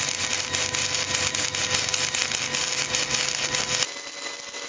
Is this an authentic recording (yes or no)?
yes